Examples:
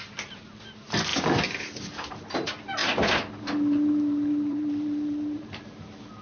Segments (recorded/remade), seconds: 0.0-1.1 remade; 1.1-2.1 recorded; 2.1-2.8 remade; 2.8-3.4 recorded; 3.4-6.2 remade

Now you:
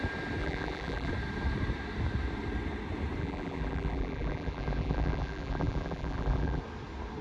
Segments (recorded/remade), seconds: 0.0-0.4 recorded; 0.4-1.1 remade; 1.1-3.2 recorded; 3.2-6.6 remade; 6.6-7.2 recorded

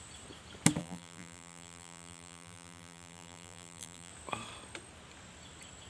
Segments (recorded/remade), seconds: 0.0-0.8 recorded; 0.8-4.1 remade; 4.1-5.9 recorded

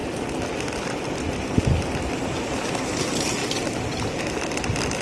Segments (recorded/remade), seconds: 0.0-5.0 recorded

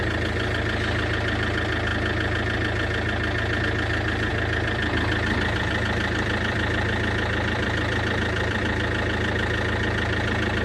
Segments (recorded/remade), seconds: 0.0-4.3 recorded; 4.3-8.6 remade; 8.6-10.6 recorded

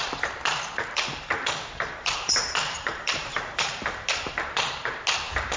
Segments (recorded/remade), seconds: 0.0-0.5 recorded; 0.5-3.7 remade; 3.7-5.6 recorded

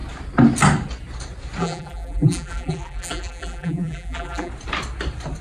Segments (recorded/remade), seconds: 0.0-1.6 recorded; 1.6-4.5 remade; 4.5-5.4 recorded